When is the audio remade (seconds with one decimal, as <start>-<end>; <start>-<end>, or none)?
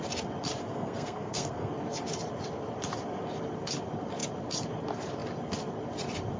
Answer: 0.6-1.7